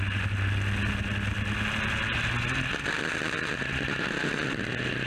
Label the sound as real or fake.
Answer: real